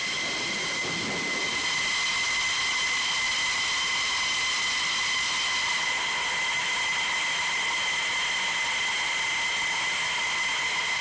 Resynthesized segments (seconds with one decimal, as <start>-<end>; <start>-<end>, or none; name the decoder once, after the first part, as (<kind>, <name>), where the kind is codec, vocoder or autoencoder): none